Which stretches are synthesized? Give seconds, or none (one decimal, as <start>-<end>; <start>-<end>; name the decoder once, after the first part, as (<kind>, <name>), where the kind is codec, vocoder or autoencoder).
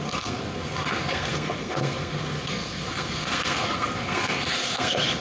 0.0-5.2 (codec, SNAC)